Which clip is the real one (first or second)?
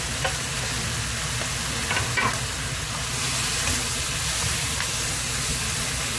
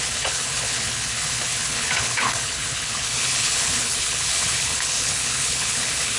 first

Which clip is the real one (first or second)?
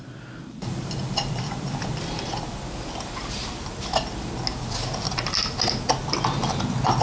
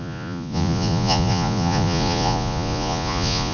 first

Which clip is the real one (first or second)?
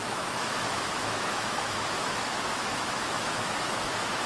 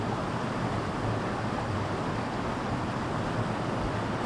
second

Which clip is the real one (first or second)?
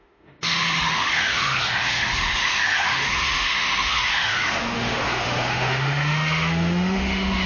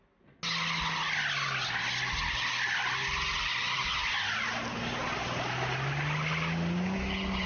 second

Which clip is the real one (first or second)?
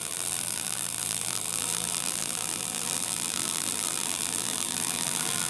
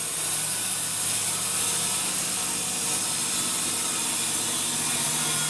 second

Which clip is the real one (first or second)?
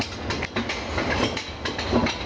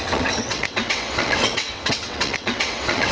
first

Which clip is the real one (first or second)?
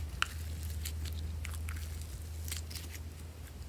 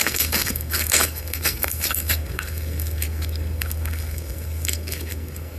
first